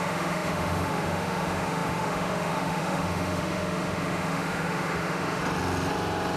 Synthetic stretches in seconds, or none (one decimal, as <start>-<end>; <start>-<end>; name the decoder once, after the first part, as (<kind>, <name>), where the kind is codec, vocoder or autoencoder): 0.0-5.4 (autoencoder, DAC-VAE)